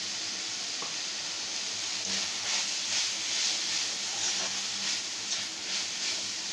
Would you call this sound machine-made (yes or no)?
no